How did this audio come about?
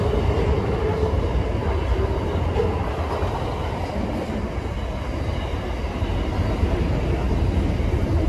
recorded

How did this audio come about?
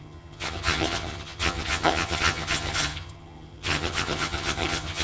remade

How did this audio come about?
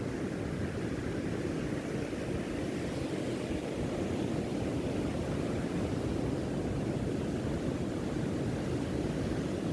recorded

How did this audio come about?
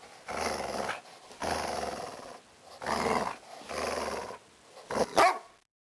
recorded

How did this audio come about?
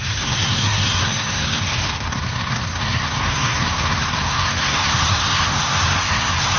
remade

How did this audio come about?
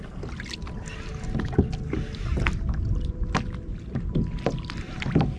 recorded